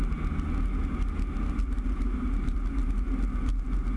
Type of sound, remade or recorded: recorded